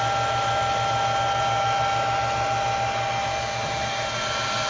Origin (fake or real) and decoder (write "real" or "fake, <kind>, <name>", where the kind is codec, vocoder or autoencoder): real